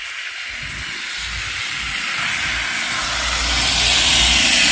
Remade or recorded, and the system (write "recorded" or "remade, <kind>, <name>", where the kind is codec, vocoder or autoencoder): recorded